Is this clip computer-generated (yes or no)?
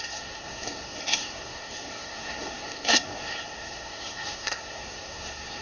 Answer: yes